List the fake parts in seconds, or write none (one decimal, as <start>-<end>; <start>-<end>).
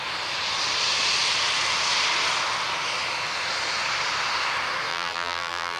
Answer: 4.9-5.8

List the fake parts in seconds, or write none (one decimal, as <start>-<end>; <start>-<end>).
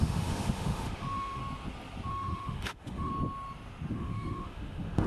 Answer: 0.0-1.4; 2.1-3.1; 3.9-5.1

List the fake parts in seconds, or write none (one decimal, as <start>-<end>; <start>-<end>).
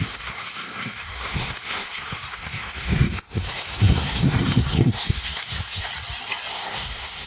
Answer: 0.0-5.9; 6.5-7.3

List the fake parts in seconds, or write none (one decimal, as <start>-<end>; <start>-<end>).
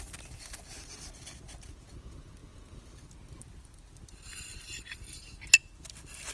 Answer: none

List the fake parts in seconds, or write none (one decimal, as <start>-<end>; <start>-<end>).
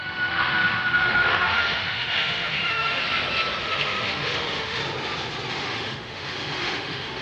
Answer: 0.0-3.0; 3.6-4.8; 5.5-7.2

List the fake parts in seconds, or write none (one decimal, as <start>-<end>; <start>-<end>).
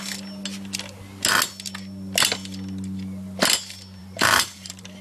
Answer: 4.0-5.0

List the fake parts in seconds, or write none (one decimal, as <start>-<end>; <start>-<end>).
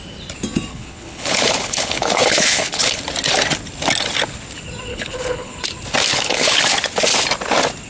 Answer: 0.7-3.0; 4.9-5.6; 6.1-6.6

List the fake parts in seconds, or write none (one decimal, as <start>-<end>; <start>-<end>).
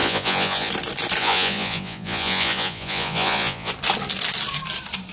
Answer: 0.0-0.7; 1.2-3.7